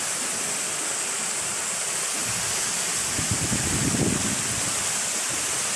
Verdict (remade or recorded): recorded